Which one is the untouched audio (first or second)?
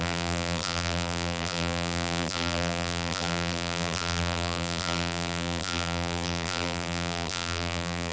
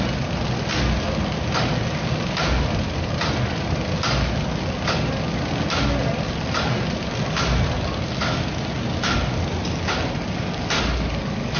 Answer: second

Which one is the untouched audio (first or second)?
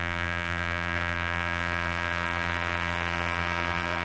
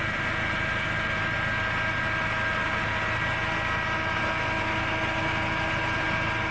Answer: second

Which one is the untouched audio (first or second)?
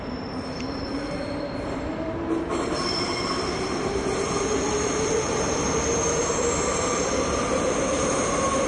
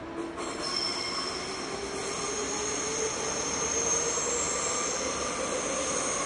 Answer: second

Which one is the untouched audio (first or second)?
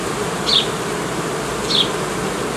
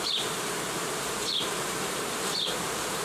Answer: first